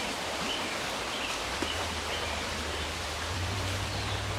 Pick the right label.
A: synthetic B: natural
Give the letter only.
A